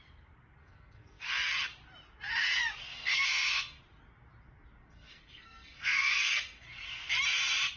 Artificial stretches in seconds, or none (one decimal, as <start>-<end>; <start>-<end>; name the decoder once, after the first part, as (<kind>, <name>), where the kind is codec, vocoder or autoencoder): 0.6-1.3 (codec, SNAC); 2.8-3.8; 4.8-7.1